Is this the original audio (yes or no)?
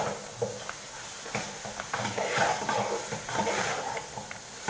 yes